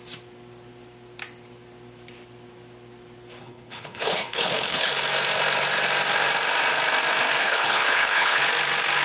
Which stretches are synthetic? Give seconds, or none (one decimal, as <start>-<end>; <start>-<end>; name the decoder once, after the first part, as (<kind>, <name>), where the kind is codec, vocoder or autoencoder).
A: 3.4-4.9 (codec, HILCodec); 7.4-8.4